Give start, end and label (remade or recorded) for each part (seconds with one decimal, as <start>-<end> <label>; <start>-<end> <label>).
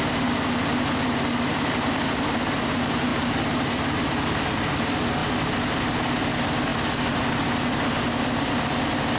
0.0-9.2 recorded